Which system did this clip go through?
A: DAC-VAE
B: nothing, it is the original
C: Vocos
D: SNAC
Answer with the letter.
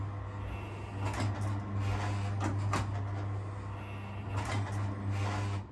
B